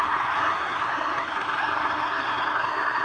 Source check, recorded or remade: remade